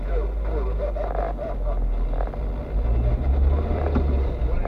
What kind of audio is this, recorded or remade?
recorded